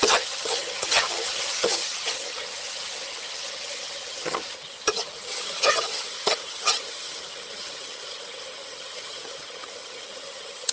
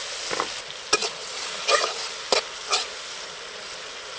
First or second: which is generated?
first